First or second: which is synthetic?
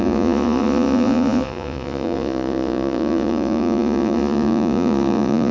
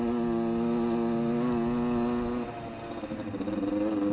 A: first